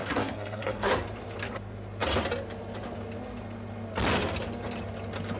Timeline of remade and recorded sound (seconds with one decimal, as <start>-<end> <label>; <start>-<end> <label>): 0.0-0.9 remade; 0.9-5.4 recorded